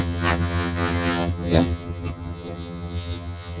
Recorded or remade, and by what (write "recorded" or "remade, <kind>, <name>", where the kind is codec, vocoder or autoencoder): remade, vocoder, HiFi-GAN